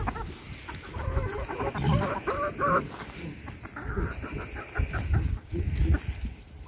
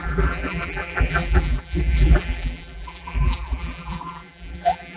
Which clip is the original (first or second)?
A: first